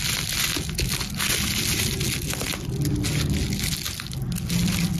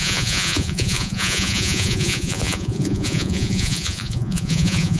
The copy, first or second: second